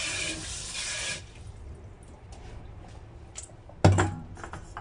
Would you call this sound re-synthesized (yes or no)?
no